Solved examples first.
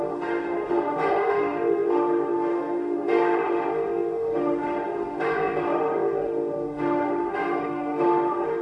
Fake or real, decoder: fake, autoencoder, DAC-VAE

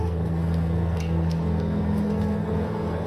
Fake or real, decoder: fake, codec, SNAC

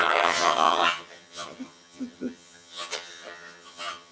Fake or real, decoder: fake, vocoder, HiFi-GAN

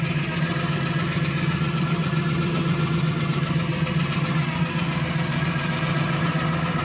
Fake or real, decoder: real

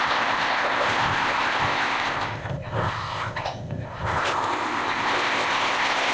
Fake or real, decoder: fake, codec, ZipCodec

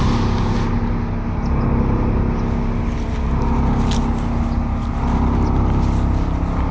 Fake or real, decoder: real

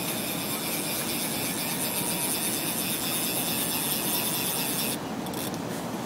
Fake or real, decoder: real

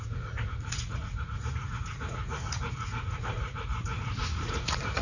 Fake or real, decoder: fake, vocoder, Vocos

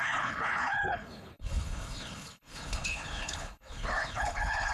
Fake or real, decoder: fake, codec, HILCodec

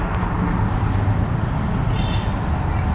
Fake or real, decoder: real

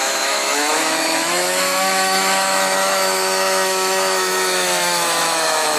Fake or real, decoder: fake, autoencoder, DAC-VAE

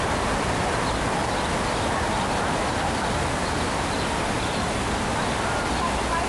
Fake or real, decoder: real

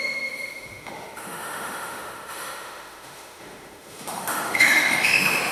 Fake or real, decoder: fake, autoencoder, DAC-VAE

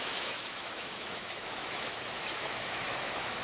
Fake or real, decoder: fake, autoencoder, DAC-VAE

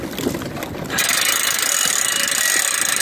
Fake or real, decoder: real